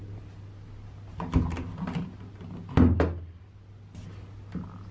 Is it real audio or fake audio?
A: real